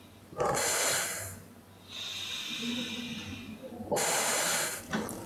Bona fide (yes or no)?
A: yes